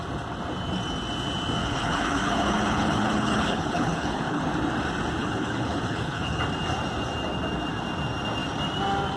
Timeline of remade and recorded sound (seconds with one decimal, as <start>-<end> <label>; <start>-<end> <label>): 0.0-1.6 recorded; 1.6-4.4 remade; 4.4-5.2 recorded; 5.2-6.4 remade; 6.4-9.2 recorded